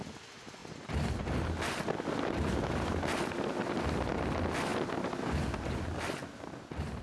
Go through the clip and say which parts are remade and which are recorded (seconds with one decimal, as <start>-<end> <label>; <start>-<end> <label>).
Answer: 0.0-7.0 recorded